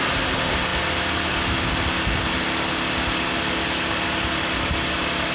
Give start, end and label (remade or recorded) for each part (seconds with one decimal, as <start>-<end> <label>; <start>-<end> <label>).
0.0-5.3 recorded